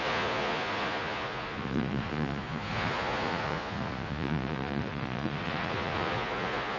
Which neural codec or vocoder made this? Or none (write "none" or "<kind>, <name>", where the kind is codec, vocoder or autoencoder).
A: vocoder, Vocos